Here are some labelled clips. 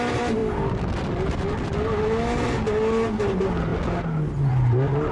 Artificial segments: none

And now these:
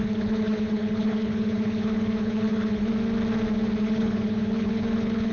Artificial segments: 0.0-2.9 (codec, HILCodec); 3.8-5.3

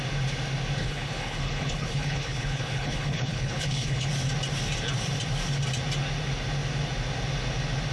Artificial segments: 0.8-4.1 (codec, HILCodec)

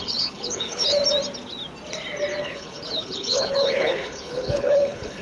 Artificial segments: 0.0-1.0 (codec, HILCodec); 2.4-5.2

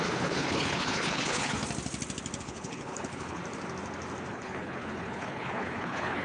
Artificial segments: 0.0-1.6 (codec, HILCodec); 2.4-3.4; 4.3-6.2